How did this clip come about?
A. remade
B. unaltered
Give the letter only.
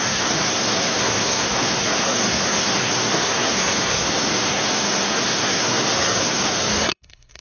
A